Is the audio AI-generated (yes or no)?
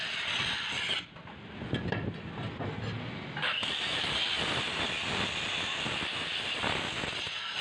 no